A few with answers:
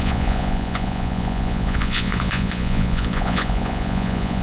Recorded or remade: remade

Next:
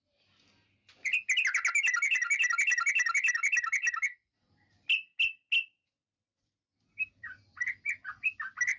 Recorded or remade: recorded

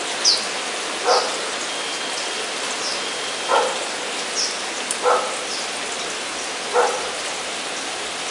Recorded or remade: recorded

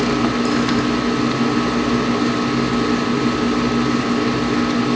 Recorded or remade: recorded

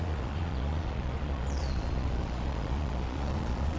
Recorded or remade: remade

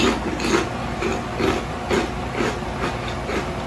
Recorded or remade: recorded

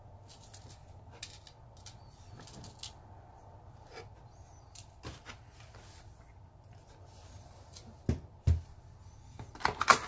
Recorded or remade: recorded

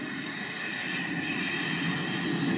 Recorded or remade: recorded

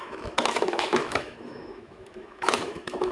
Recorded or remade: remade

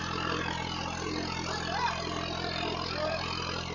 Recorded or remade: recorded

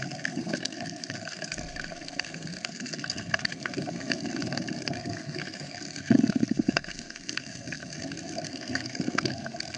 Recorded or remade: remade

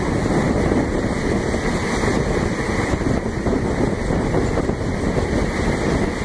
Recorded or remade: recorded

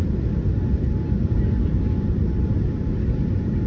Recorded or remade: remade